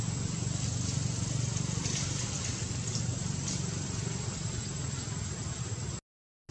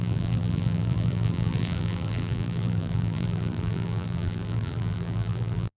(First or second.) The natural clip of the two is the first